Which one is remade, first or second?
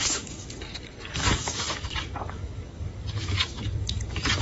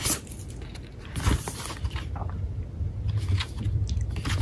first